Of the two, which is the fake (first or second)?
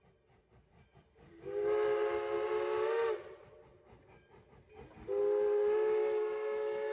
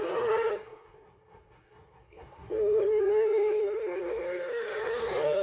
second